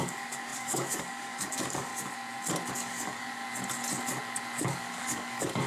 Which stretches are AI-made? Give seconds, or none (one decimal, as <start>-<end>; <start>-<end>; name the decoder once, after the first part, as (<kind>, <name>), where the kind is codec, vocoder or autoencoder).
0.0-1.9 (codec, DAC); 2.7-3.4; 4.6-5.7